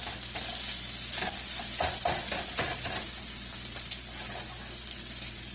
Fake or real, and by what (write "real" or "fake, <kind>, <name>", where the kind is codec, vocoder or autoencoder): real